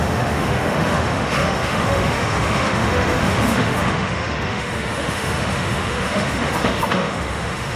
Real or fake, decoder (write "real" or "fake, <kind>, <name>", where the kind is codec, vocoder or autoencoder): fake, autoencoder, DAC-VAE